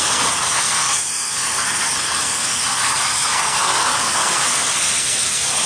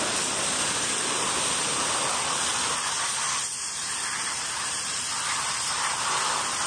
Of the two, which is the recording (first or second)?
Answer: second